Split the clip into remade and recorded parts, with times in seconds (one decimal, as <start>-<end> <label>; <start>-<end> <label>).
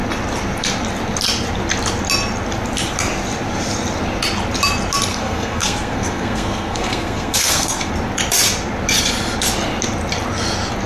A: 0.0-5.1 recorded; 5.1-7.9 remade; 7.9-10.9 recorded